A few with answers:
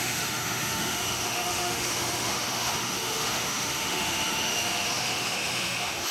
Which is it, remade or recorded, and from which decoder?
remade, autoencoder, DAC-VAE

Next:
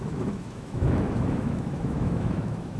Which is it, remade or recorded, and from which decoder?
remade, autoencoder, DAC-VAE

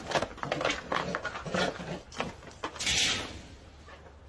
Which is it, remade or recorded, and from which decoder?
recorded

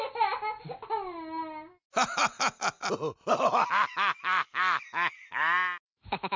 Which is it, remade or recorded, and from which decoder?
recorded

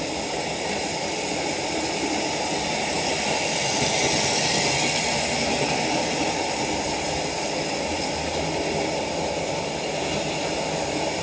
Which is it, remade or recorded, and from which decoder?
recorded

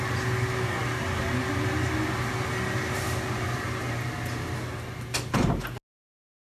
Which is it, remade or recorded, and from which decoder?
recorded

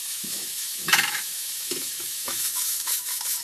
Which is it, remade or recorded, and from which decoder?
remade, autoencoder, DAC-VAE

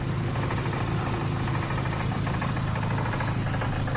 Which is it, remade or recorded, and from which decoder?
recorded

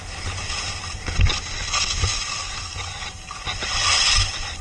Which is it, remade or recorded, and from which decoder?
recorded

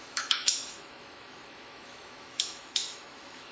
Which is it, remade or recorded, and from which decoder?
remade, autoencoder, DAC-VAE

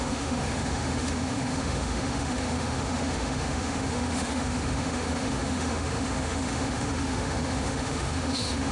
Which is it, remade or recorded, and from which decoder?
remade, autoencoder, DAC-VAE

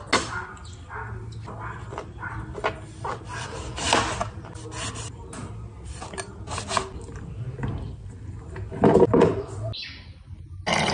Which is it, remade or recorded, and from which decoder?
recorded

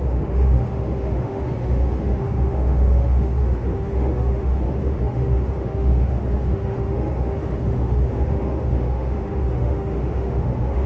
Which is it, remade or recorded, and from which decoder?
remade, autoencoder, DAC-VAE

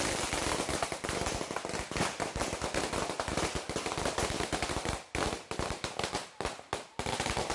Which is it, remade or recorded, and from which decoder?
recorded